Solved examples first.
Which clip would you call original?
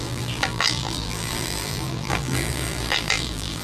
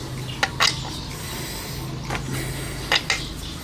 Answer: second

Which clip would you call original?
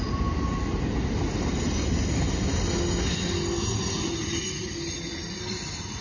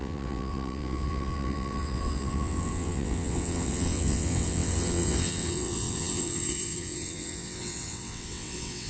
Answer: first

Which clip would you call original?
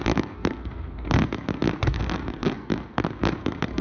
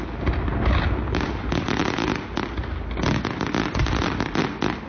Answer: second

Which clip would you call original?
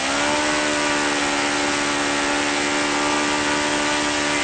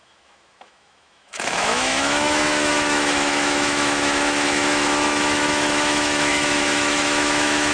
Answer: first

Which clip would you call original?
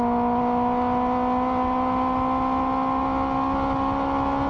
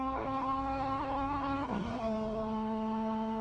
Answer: first